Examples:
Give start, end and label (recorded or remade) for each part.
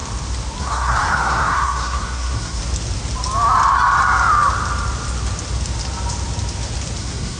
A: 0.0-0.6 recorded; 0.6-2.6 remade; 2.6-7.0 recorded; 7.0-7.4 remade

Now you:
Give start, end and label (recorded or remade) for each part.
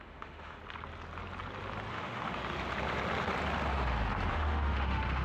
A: 0.0-0.6 remade; 0.6-1.9 recorded; 1.9-2.4 remade; 2.4-4.3 recorded; 4.3-5.2 remade